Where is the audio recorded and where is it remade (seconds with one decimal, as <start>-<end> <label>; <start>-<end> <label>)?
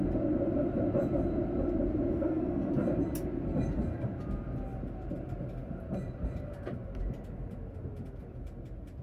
0.0-2.1 recorded; 2.1-2.7 remade; 2.7-9.0 recorded